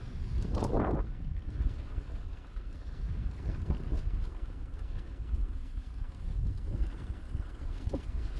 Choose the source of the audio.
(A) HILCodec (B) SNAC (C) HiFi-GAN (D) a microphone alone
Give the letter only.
B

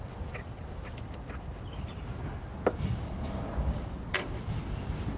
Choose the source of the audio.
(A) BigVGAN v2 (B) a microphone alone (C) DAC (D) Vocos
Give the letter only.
B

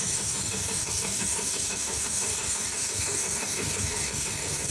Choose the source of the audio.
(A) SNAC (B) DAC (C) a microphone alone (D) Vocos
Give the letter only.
B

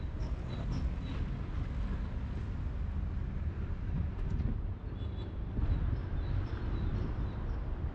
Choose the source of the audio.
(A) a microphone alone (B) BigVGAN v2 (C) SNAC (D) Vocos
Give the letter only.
A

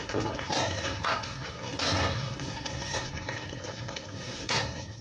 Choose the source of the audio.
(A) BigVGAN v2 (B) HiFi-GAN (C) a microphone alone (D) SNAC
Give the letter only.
D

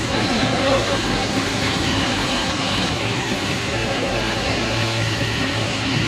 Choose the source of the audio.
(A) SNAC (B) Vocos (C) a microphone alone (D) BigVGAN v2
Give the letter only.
A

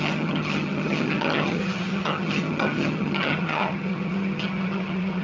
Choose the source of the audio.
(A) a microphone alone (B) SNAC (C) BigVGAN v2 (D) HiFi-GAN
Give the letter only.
D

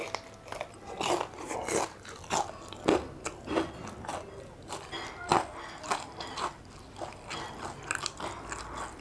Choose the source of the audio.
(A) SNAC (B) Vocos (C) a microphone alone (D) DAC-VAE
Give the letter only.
C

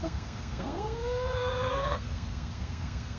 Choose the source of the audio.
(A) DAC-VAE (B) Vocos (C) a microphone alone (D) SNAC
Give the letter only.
D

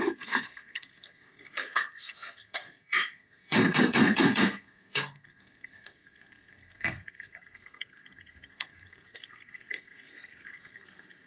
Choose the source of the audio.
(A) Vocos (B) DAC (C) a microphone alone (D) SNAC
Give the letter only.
D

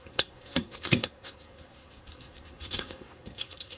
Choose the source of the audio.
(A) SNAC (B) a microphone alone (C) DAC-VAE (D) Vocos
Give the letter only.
A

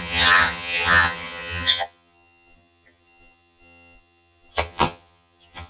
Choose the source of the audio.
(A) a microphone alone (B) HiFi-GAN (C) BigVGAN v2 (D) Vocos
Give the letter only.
B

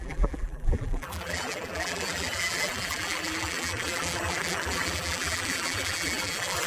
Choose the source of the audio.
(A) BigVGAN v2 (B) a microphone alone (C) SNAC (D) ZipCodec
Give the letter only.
A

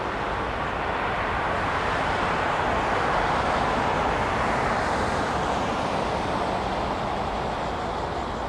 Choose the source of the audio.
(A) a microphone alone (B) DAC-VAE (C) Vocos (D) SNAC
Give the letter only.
A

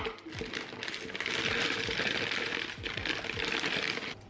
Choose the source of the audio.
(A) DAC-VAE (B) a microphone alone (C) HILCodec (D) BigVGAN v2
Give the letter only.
B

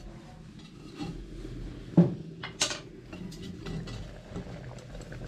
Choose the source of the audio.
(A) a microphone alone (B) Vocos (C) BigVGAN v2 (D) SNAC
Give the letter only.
A